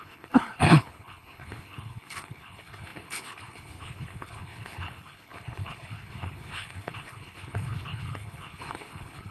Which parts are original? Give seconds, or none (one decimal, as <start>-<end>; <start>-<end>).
none